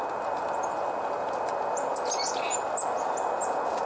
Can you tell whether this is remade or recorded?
recorded